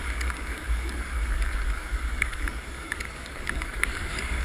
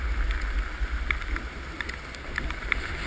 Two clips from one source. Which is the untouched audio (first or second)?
second